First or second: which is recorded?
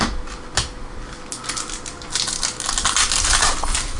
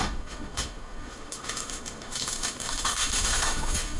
first